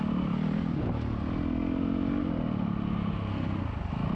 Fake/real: real